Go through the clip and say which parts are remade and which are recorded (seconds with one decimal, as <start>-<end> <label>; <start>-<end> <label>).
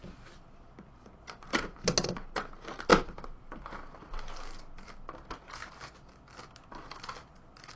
0.0-7.8 recorded